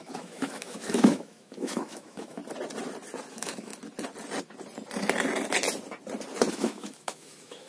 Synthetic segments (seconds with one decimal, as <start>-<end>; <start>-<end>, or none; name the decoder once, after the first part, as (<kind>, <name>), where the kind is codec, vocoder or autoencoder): 0.0-2.4 (autoencoder, DAC-VAE); 3.3-3.7; 6.5-7.7